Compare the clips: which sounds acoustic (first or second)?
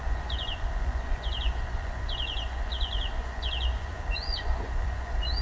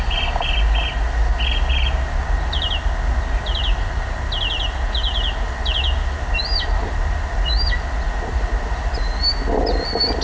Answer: second